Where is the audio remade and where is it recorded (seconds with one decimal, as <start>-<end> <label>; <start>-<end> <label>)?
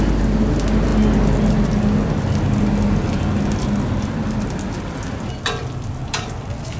0.0-6.8 recorded